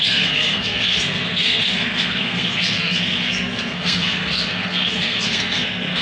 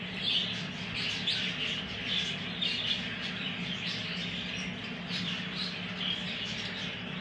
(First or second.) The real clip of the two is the second